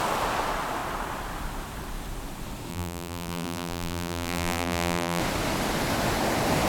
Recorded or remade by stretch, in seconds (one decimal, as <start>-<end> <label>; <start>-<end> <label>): 0.0-2.7 recorded; 2.7-5.2 remade; 5.2-6.7 recorded